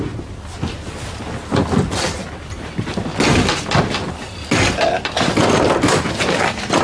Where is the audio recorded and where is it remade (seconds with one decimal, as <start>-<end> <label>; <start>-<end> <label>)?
0.0-6.8 recorded